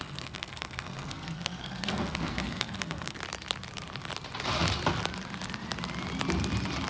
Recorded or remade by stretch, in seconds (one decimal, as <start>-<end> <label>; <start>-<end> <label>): 0.0-3.2 remade; 3.2-6.9 recorded

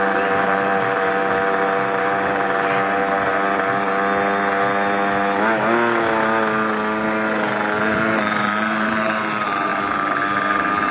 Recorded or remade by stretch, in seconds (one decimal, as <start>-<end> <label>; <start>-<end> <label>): 0.0-1.2 remade; 1.2-2.0 recorded; 2.0-3.0 remade; 3.0-7.8 recorded; 7.8-9.7 remade; 9.7-10.9 recorded

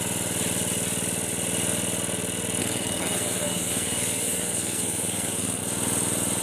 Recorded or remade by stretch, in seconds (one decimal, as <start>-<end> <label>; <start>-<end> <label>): 0.0-2.6 recorded; 2.6-5.6 remade; 5.6-6.4 recorded

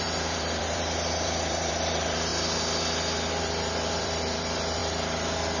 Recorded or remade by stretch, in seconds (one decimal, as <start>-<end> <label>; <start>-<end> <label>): 0.0-2.3 remade; 2.3-3.4 recorded; 3.4-5.6 remade

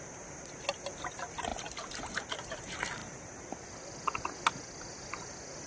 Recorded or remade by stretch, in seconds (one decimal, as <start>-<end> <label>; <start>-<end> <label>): 0.0-5.7 recorded